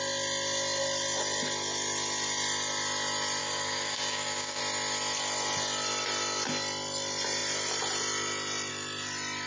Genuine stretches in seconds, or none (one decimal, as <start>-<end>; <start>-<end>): 0.0-3.4; 4.6-9.5